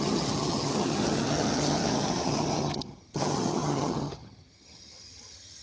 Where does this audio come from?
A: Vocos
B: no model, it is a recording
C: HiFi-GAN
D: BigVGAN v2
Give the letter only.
C